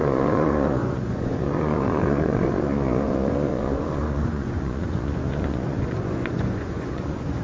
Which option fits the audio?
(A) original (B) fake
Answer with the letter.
B